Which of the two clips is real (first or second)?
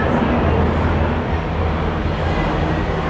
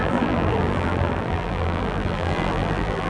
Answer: first